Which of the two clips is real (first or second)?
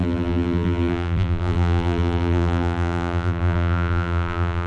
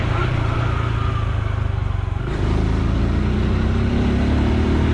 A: second